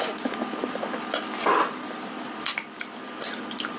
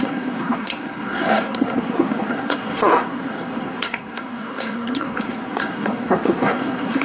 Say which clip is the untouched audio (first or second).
first